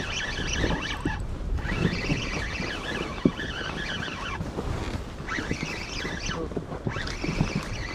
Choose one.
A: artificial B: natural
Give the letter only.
B